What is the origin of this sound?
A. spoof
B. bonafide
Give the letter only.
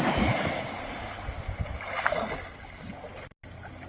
B